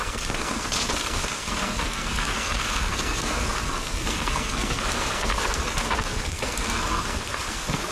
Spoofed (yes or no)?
yes